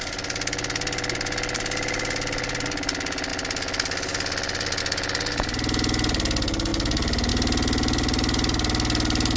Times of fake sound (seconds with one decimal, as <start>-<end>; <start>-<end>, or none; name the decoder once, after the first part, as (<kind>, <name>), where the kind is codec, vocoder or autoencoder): none